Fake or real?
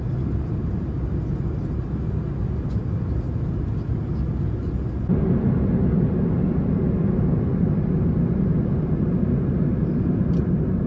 real